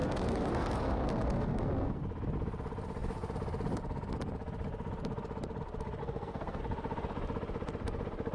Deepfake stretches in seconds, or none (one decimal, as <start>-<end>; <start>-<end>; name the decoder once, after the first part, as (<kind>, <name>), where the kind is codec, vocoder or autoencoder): 0.0-2.0 (codec, SNAC); 6.0-6.6